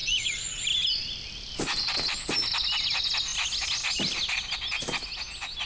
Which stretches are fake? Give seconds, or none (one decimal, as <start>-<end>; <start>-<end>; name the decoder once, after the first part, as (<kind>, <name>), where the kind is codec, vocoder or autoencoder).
0.0-0.6 (vocoder, Vocos)